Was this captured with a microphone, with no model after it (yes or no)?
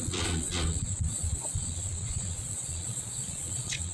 no